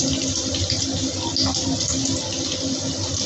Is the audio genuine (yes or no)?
yes